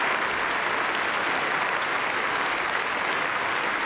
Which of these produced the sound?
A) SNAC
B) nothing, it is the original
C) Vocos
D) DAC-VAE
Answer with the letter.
B